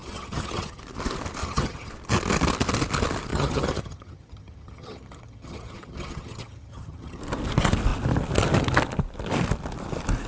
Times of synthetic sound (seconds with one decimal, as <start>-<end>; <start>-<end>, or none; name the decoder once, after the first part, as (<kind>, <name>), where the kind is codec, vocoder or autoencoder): 0.0-0.8 (vocoder, HiFi-GAN); 1.4-1.9; 3.3-7.2